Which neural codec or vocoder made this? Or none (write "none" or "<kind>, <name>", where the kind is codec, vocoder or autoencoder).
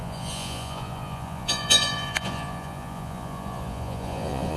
vocoder, Vocos